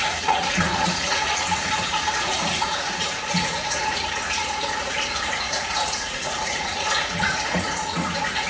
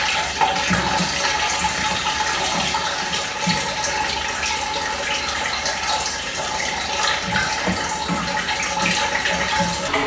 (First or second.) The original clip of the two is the second